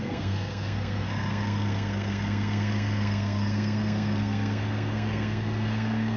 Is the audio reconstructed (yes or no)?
yes